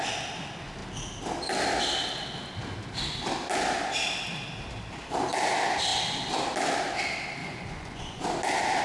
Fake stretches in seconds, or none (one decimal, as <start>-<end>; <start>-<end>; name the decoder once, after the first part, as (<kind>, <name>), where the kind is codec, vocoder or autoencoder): 7.4-8.2 (vocoder, Vocos)